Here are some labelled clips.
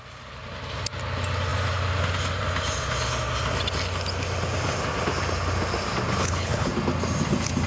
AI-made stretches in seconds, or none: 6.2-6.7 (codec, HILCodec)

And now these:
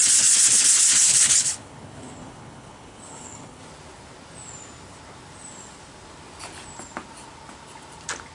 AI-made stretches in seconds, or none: 1.1-3.6 (codec, HILCodec)

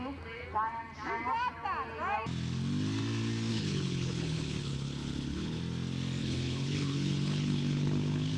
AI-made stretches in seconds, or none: 3.5-5.6 (codec, HILCodec); 6.2-8.4